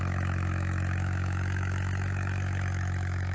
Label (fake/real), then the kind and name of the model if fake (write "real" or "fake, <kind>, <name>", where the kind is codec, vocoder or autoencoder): fake, autoencoder, DAC-VAE